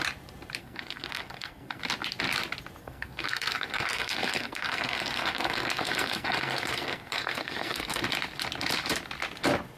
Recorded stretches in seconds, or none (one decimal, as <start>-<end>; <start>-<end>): 0.0-0.6; 1.8-2.8; 8.0-9.8